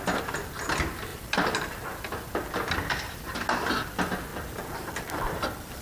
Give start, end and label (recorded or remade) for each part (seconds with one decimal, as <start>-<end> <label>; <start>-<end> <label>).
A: 0.0-1.1 recorded; 1.1-2.0 remade; 2.0-4.3 recorded; 4.3-5.8 remade